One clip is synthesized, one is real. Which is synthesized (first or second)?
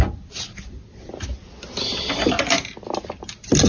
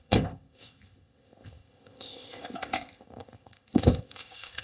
second